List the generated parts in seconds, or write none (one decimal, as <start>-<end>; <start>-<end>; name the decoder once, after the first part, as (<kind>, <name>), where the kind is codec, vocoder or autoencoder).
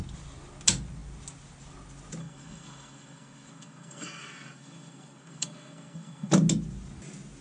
2.2-6.3 (codec, SNAC)